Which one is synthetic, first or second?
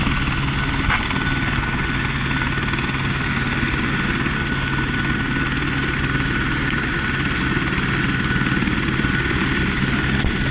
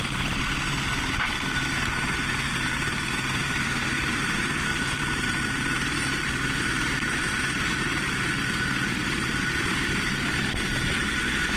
second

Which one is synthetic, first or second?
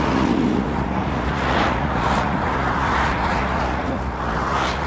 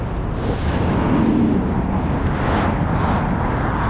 first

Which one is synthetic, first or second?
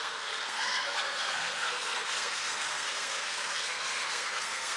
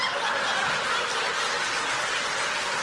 first